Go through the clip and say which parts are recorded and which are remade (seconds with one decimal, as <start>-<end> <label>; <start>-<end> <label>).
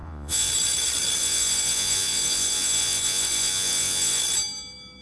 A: 0.0-0.5 remade; 0.5-1.2 recorded; 1.2-4.2 remade; 4.2-5.0 recorded